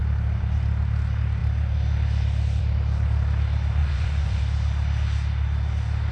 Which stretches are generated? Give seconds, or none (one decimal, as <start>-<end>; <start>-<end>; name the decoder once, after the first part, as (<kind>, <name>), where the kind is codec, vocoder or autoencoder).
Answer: 3.8-4.4 (vocoder, Vocos)